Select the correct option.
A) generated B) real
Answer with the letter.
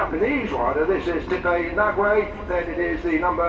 B